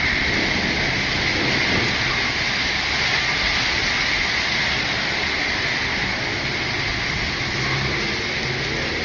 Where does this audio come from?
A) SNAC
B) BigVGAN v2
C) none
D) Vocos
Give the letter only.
C